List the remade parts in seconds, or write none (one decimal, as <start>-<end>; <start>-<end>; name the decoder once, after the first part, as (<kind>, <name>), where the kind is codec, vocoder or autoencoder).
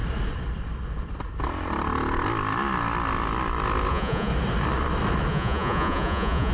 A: 3.9-4.3 (vocoder, Vocos); 5.3-6.5